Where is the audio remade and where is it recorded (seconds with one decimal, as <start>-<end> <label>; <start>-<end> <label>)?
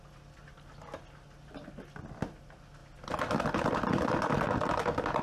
0.0-5.2 recorded